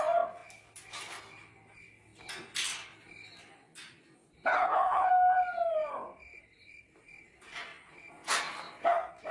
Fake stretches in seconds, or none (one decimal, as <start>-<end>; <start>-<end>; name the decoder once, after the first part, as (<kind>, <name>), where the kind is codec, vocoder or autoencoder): 4.5-5.1 (codec, HILCodec)